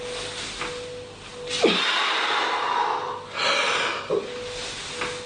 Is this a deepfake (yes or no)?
no